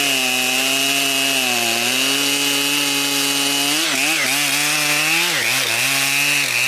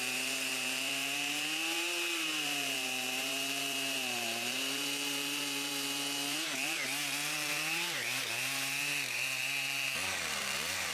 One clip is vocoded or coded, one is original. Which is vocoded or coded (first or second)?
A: second